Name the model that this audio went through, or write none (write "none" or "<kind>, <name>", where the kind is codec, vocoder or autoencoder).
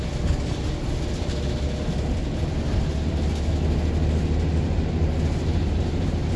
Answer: none